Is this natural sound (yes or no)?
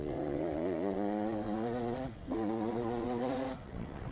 no